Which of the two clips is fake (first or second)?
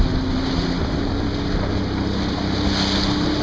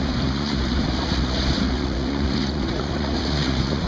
second